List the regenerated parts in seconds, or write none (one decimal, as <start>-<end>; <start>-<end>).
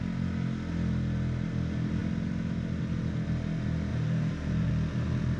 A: 3.9-4.7